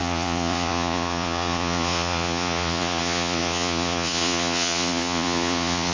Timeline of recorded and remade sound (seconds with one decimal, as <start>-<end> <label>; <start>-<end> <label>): 0.0-5.9 remade